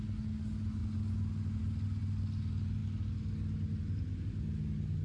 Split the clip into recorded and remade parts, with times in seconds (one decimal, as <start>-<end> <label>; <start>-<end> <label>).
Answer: 0.0-5.0 recorded